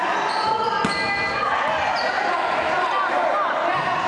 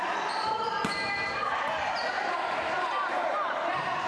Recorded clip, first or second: first